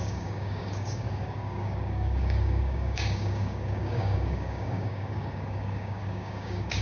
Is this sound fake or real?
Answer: fake